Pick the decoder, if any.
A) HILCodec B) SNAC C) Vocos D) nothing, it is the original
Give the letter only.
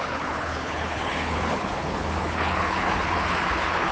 A